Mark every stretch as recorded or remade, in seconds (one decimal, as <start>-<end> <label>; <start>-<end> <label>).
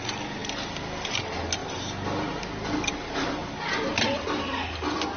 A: 0.0-5.2 recorded